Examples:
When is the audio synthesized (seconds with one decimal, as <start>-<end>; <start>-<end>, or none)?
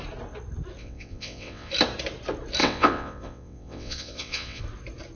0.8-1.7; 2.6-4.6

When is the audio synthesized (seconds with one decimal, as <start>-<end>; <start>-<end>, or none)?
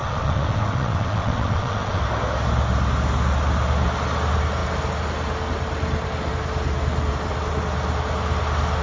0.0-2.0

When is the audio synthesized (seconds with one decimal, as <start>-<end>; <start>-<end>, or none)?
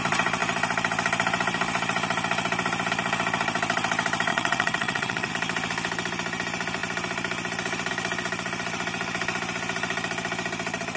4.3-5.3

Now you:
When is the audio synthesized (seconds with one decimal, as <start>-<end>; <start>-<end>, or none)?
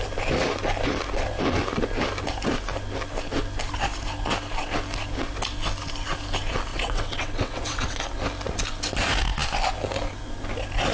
6.7-8.0